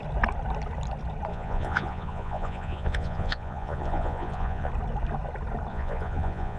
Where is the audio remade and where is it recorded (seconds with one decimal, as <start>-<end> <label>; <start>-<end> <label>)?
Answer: 0.0-1.3 recorded; 1.3-4.7 remade; 4.7-5.7 recorded; 5.7-6.6 remade